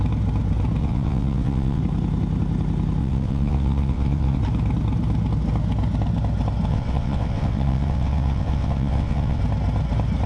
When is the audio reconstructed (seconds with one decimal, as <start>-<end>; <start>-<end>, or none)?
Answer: 0.8-1.8; 3.0-4.4; 6.7-9.4